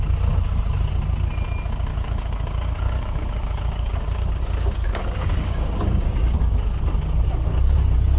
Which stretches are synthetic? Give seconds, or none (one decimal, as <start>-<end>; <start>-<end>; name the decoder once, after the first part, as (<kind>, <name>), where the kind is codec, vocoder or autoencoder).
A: 1.9-6.8 (codec, DAC)